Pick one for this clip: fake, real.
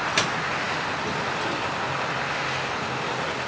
real